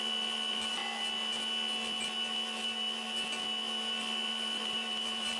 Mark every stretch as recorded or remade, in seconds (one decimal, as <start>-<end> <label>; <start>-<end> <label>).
0.0-0.8 remade; 0.8-4.0 recorded; 4.0-5.4 remade